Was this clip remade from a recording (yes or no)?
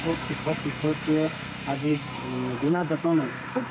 yes